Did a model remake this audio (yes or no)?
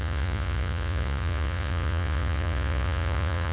yes